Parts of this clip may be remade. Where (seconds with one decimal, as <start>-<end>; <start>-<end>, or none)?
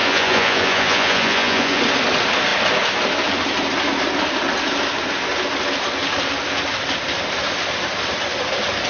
0.0-1.8